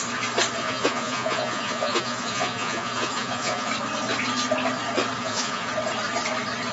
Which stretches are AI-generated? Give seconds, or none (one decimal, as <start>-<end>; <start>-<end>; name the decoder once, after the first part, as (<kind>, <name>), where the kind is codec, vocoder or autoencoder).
0.6-3.7 (vocoder, Vocos); 5.2-5.7